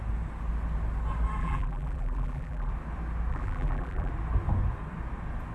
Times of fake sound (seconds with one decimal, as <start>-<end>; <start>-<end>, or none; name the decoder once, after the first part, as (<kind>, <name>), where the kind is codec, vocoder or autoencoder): 1.4-2.7 (vocoder, BigVGAN v2); 3.3-4.1